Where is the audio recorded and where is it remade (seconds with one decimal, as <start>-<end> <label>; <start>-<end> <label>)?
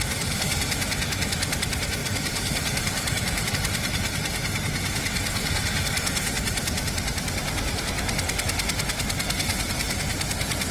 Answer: 0.0-2.0 recorded; 2.0-3.5 remade; 3.5-10.7 recorded